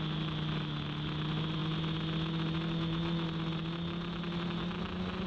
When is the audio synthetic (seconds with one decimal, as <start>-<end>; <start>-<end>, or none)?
none